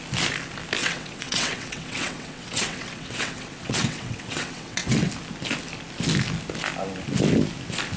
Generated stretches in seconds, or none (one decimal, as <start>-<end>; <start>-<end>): 0.8-5.1

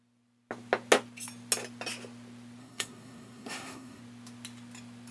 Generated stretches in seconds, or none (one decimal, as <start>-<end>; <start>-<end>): 2.6-4.0

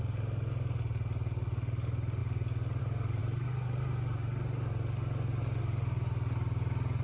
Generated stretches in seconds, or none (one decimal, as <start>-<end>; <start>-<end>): none

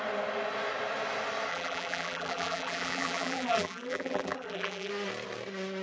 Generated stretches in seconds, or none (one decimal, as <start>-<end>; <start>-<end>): 1.5-4.9

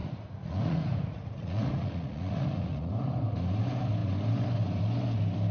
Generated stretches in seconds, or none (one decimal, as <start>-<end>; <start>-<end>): 0.0-2.9